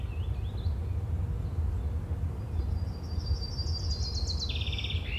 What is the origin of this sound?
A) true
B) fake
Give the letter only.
A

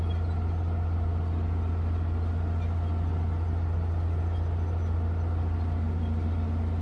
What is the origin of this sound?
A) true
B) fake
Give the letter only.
A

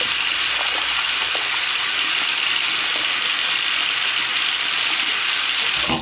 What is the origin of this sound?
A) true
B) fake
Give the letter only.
A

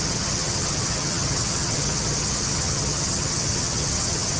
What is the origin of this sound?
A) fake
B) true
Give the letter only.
A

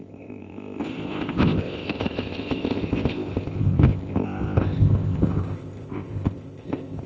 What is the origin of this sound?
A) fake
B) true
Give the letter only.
A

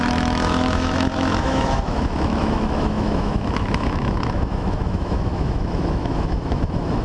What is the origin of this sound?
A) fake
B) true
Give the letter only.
A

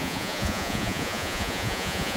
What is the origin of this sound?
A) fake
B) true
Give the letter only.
A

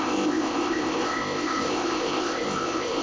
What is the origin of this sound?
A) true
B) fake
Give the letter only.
B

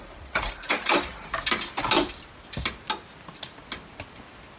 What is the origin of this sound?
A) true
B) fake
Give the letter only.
A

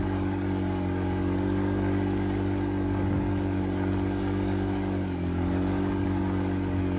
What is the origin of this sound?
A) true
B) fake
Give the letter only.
B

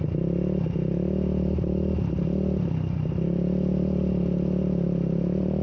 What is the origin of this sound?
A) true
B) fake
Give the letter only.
A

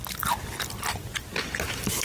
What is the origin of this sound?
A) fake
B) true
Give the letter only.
B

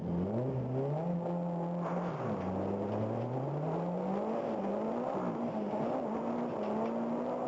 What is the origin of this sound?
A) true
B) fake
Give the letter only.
A